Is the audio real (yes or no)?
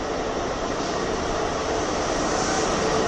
yes